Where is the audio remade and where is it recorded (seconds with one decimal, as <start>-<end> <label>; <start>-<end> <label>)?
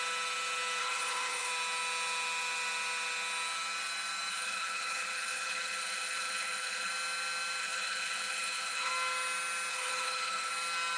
0.0-0.8 recorded; 0.8-1.5 remade; 1.5-4.3 recorded; 4.3-6.9 remade; 6.9-7.6 recorded; 7.6-8.9 remade; 8.9-9.7 recorded; 9.7-10.5 remade; 10.5-11.0 recorded